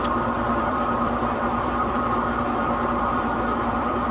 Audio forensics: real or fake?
fake